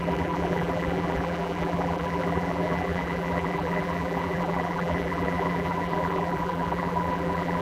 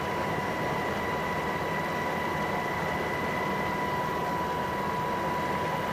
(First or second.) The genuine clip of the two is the second